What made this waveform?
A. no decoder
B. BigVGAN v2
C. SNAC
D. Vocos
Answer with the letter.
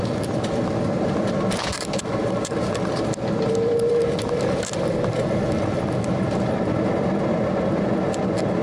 B